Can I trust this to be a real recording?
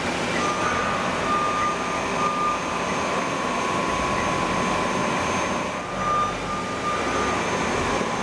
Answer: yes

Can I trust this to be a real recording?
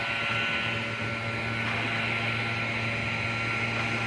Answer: yes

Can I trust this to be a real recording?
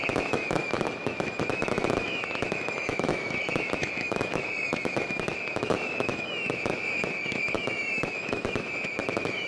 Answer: no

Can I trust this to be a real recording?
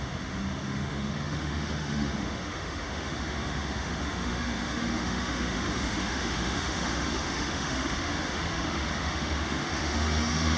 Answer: no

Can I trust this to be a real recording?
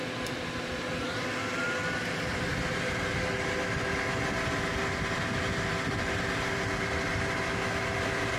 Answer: yes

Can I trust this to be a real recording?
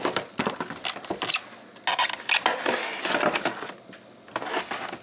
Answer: yes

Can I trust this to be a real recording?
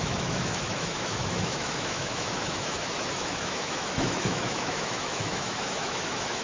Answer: no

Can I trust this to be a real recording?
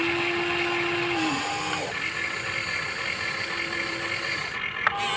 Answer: yes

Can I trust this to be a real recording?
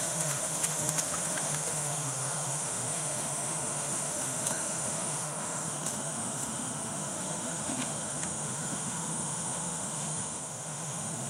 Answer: no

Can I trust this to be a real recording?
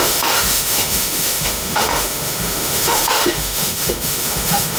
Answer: no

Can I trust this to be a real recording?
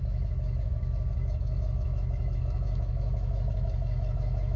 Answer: no